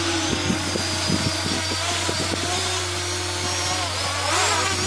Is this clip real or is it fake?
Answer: real